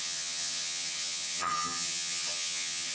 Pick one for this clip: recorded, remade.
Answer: remade